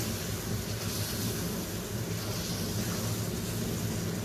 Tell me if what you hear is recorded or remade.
recorded